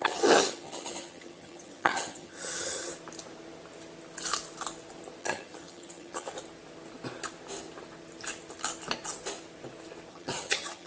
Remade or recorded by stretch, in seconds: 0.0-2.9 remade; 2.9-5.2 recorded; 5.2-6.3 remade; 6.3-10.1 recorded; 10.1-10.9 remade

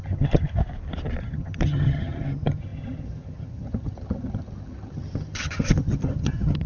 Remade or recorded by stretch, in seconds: 0.0-0.6 remade; 0.6-1.2 recorded; 1.2-6.7 remade

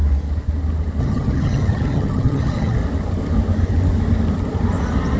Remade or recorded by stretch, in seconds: 0.0-1.0 recorded; 1.0-2.8 remade; 2.8-5.2 recorded